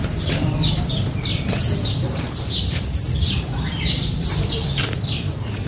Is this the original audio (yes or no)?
no